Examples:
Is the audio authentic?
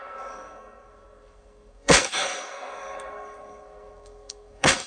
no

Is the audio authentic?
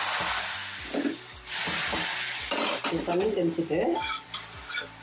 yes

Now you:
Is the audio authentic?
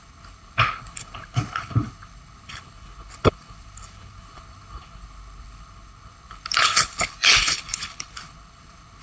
no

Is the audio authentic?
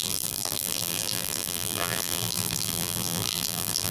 no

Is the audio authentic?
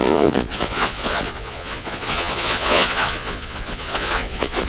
no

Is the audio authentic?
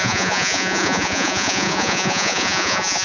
no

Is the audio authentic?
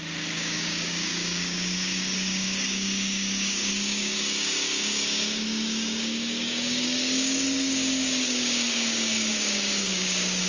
no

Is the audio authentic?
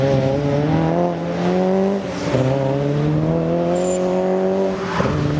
yes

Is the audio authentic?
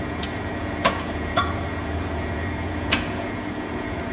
no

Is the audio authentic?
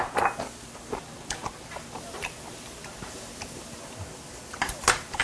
yes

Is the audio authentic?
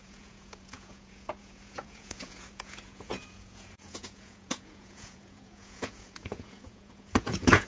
no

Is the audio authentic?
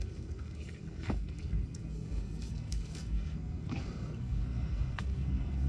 no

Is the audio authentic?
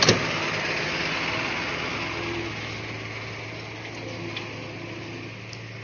yes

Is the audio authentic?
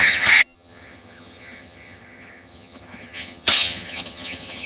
no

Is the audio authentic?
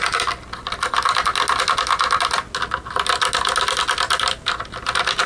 yes